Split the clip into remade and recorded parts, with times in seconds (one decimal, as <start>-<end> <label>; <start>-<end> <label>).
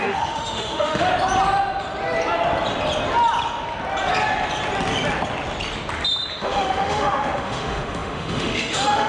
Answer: 0.0-1.1 remade; 1.1-6.3 recorded; 6.3-9.1 remade